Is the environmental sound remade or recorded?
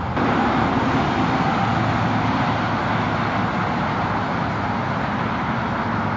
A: recorded